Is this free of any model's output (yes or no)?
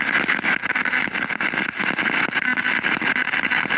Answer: yes